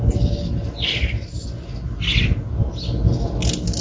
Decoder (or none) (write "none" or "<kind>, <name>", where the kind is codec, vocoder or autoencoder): none